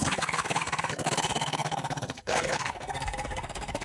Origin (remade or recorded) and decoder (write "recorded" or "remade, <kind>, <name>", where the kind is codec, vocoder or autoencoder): remade, codec, SNAC